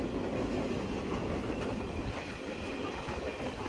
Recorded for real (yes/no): yes